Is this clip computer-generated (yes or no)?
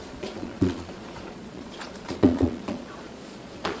yes